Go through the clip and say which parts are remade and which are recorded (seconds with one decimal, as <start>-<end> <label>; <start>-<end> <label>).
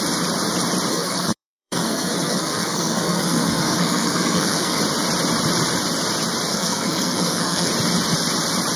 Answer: 0.0-0.9 recorded; 0.9-4.8 remade; 4.8-6.5 recorded; 6.5-7.7 remade; 7.7-8.8 recorded